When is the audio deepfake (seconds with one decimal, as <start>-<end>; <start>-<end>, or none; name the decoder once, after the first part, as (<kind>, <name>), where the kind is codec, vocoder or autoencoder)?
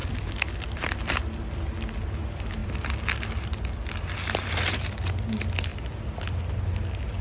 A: 0.0-1.7 (vocoder, BigVGAN v2); 2.6-5.0; 5.7-6.4